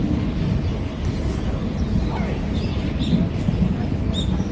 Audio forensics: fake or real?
real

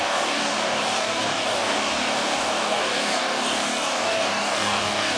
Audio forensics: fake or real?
fake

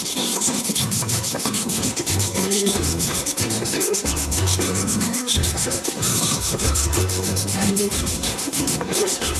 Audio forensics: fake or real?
fake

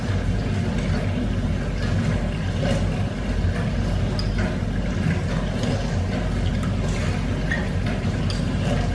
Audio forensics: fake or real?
real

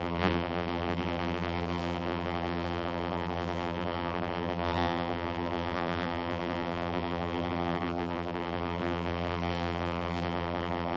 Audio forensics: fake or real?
fake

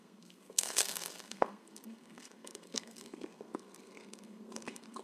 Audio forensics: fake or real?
fake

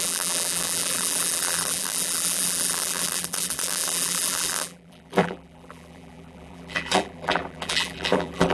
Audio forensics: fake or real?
fake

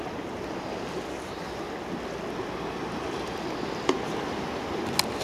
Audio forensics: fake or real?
real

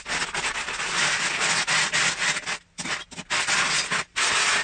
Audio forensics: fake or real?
real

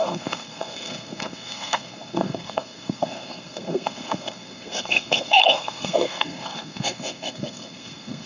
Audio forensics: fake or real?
fake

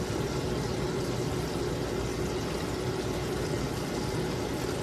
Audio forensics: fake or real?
real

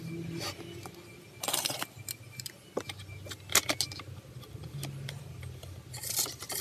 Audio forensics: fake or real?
real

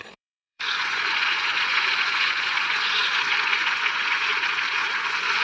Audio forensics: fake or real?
fake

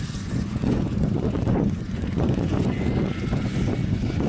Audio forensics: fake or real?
fake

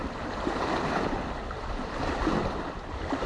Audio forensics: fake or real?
fake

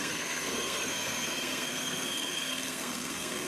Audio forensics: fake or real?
fake